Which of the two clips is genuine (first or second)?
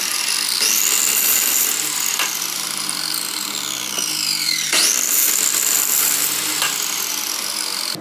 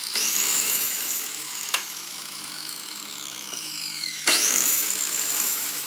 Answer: first